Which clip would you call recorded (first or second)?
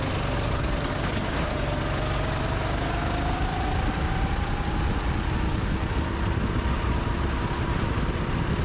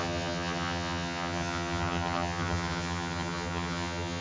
first